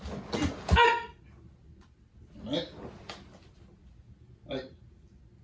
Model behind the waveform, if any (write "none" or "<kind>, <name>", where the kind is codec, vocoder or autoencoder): none